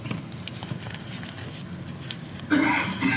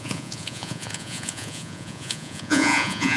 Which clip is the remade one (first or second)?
second